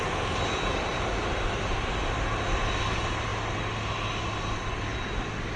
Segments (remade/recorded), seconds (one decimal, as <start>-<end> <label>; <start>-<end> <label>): 0.0-5.6 recorded